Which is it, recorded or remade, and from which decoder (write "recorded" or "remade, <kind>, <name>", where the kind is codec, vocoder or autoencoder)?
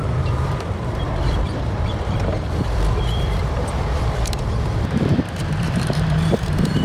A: remade, vocoder, BigVGAN v2